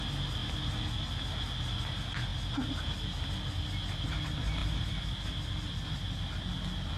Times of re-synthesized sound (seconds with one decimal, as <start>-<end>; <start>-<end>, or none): none